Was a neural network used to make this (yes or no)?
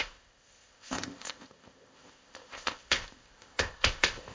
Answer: yes